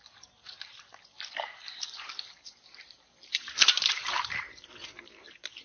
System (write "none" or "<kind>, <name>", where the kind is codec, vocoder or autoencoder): vocoder, BigVGAN v2